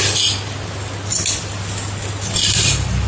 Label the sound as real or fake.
real